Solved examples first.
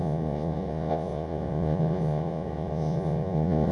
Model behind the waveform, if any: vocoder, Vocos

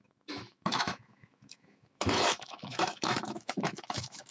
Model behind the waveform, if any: autoencoder, DAC-VAE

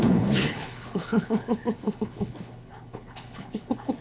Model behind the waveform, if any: codec, HILCodec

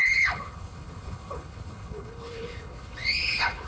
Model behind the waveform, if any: codec, HILCodec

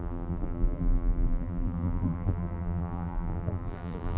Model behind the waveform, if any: vocoder, BigVGAN v2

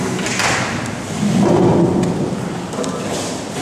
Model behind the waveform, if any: none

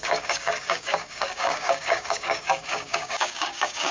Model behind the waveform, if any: codec, DAC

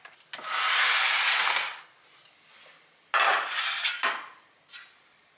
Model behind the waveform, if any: none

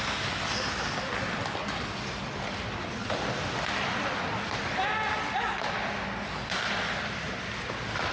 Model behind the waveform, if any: none